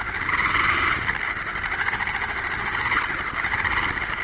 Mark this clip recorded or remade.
recorded